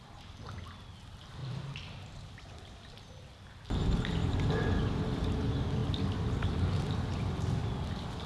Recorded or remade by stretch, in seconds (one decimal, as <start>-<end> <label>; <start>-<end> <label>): 0.0-8.3 recorded

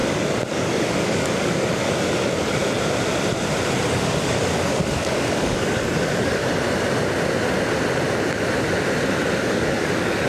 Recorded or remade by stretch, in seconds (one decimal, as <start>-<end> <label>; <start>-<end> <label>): 0.0-2.6 remade; 2.6-3.9 recorded; 3.9-6.4 remade; 6.4-9.4 recorded; 9.4-10.3 remade

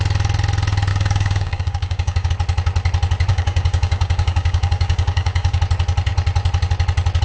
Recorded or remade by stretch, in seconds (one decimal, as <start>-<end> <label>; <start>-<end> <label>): 0.0-0.9 recorded; 0.9-2.3 remade; 2.3-3.3 recorded; 3.3-5.6 remade; 5.6-7.2 recorded

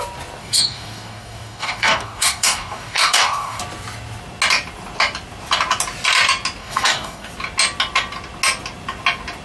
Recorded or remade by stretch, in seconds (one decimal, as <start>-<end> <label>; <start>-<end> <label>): 0.0-0.4 recorded; 0.4-3.6 remade; 3.6-6.6 recorded; 6.6-7.3 remade; 7.3-9.4 recorded

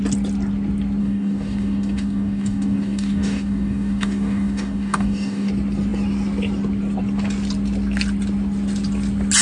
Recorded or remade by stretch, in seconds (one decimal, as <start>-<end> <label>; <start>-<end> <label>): 0.0-1.0 recorded; 1.0-5.5 remade; 5.5-9.4 recorded

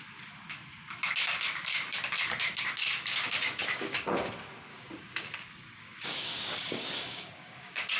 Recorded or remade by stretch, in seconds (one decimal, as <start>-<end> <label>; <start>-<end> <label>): 0.0-2.8 recorded; 2.8-4.3 remade; 4.3-4.7 recorded; 4.7-8.0 remade